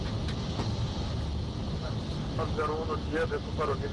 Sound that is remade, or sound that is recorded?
recorded